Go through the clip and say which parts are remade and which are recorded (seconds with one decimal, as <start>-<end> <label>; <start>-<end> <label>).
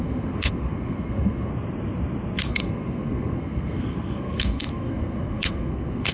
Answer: 0.0-1.5 remade; 1.5-2.5 recorded; 2.5-6.1 remade